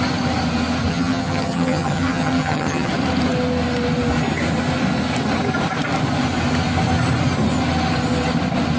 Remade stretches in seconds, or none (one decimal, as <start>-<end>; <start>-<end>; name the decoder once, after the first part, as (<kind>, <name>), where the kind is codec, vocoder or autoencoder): 0.9-2.9 (vocoder, HiFi-GAN)